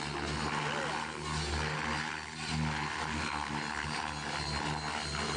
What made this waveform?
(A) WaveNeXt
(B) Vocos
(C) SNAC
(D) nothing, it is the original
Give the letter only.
D